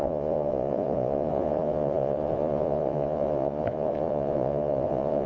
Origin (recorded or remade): remade